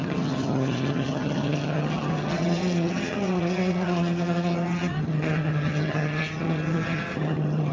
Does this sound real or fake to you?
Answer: fake